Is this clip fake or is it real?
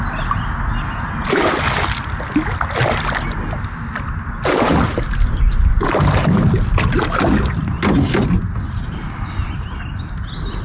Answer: real